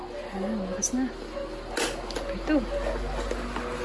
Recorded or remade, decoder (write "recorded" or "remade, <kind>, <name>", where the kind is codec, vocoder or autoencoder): recorded